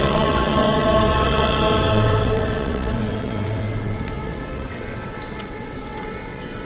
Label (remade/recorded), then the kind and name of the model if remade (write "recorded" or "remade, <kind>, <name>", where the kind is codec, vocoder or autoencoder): remade, vocoder, WaveNeXt